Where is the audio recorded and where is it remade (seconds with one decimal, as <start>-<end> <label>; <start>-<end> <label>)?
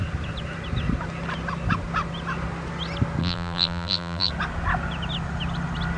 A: 0.0-3.2 recorded; 3.2-4.3 remade; 4.3-6.0 recorded